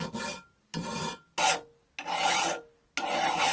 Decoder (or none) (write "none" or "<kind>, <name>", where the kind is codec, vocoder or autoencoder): none